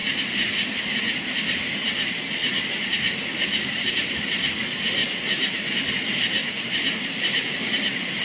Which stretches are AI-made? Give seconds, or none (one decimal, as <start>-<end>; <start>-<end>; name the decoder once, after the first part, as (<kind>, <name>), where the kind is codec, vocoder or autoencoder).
none